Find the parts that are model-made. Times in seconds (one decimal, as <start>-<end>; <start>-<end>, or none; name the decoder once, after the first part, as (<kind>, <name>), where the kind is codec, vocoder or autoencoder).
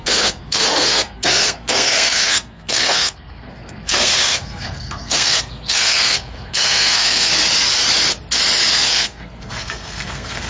0.0-7.3 (codec, SNAC); 8.7-10.5